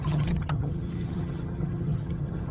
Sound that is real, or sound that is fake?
fake